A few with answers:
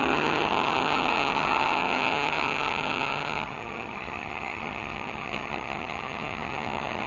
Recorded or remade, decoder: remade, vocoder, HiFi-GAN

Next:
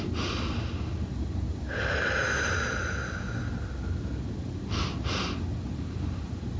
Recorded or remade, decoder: recorded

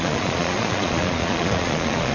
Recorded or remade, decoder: remade, vocoder, Vocos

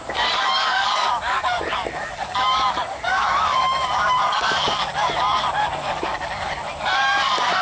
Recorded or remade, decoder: remade, codec, DAC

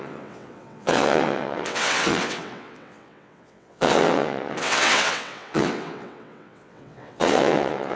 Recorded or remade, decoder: remade, vocoder, WaveNeXt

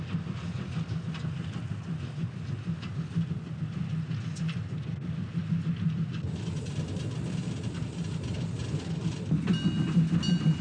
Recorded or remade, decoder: recorded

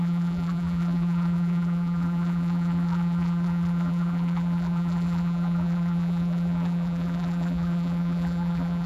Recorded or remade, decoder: remade, vocoder, BigVGAN v2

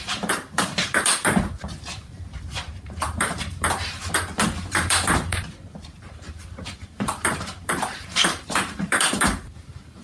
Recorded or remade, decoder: remade, vocoder, BigVGAN v2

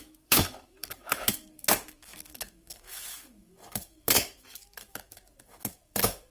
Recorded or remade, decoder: remade, autoencoder, DAC-VAE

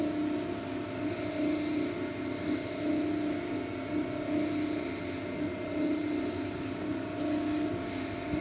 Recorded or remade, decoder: recorded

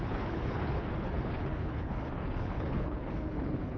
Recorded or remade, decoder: remade, codec, HILCodec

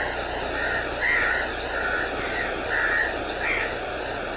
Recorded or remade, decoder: recorded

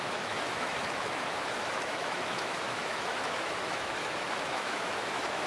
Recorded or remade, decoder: remade, autoencoder, DAC-VAE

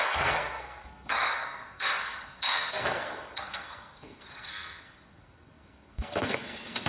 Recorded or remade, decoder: remade, codec, SNAC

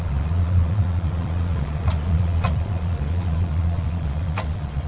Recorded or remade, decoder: remade, vocoder, Vocos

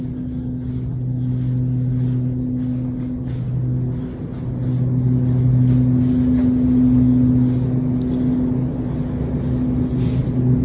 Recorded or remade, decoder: recorded